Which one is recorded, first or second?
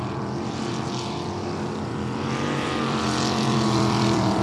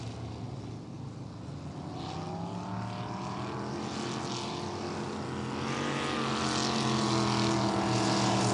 second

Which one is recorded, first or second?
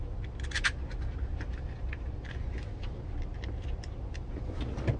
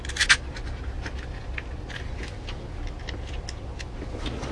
second